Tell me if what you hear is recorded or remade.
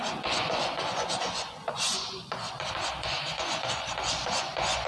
remade